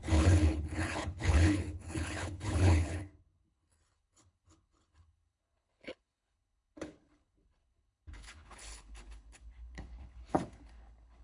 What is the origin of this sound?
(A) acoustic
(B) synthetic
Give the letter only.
B